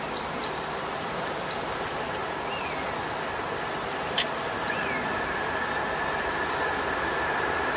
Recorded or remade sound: recorded